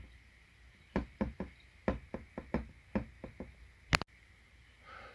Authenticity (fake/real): real